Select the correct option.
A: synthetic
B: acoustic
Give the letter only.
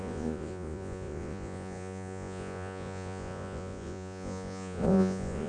A